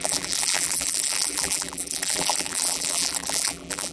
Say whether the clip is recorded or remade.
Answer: remade